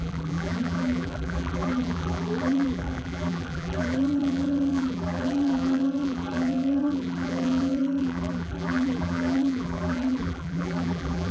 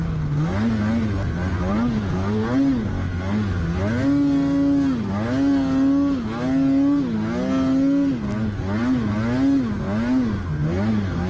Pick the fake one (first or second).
first